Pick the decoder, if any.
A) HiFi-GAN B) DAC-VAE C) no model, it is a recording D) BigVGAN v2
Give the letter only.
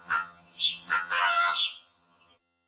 A